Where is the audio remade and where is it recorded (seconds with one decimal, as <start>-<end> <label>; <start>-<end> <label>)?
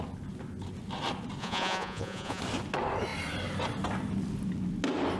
0.0-1.4 recorded; 1.4-2.4 remade; 2.4-5.2 recorded